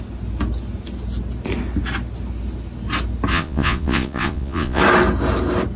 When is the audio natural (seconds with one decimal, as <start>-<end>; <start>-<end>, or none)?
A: 0.0-3.3; 4.8-5.8